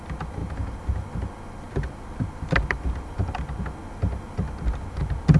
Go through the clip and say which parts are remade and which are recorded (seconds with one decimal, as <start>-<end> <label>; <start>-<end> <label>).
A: 0.0-0.4 recorded; 0.4-3.6 remade; 3.6-5.4 recorded